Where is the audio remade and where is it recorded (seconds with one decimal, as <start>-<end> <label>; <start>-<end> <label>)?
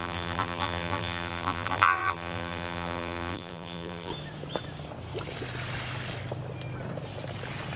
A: 0.0-4.1 remade; 4.1-7.8 recorded